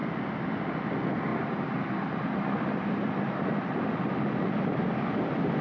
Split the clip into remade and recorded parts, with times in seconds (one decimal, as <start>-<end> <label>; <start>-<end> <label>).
0.0-5.6 recorded